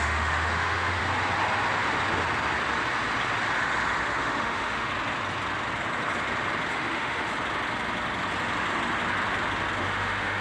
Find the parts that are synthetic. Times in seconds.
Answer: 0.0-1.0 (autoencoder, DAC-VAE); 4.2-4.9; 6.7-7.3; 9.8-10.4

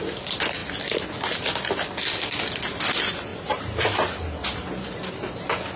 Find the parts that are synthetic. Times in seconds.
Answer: 3.3-5.1 (vocoder, BigVGAN v2)

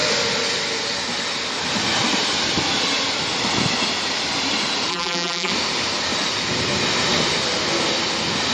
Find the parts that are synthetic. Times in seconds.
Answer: 4.9-5.5 (vocoder, BigVGAN v2)